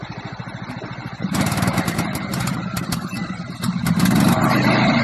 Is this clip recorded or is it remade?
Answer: remade